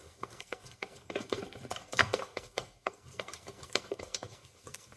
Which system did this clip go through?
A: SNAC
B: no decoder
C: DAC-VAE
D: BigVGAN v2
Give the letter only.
A